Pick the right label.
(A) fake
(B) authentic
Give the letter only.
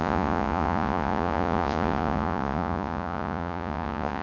A